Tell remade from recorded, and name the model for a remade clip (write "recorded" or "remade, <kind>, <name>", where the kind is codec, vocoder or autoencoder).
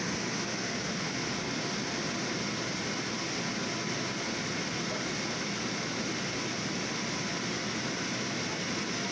recorded